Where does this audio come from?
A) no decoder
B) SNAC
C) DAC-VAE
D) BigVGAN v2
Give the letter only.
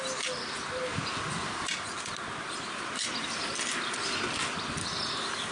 A